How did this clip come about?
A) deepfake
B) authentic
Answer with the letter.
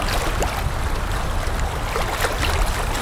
B